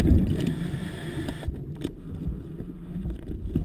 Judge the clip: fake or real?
real